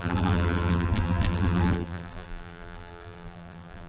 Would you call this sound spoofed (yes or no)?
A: yes